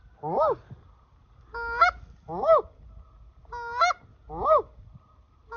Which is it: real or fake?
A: real